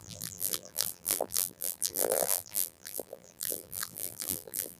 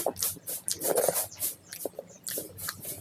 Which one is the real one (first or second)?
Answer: second